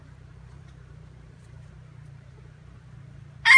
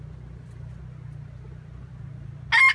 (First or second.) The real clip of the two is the second